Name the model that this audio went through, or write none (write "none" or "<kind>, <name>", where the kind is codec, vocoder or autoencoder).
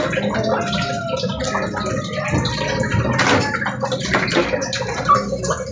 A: none